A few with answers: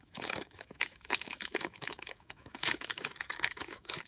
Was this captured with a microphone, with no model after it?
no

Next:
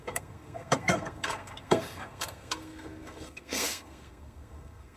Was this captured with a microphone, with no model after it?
no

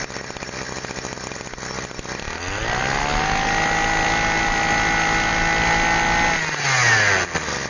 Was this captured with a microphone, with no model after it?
yes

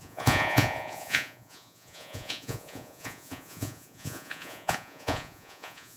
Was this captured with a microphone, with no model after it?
no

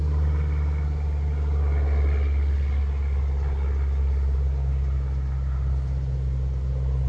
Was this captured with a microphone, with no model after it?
yes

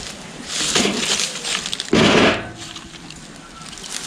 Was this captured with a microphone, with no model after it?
yes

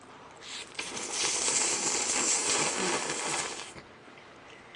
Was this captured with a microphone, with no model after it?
yes